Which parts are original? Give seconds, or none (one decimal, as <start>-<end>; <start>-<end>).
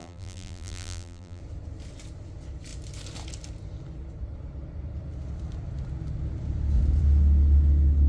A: 1.4-8.1